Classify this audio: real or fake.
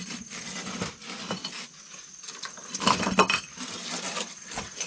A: real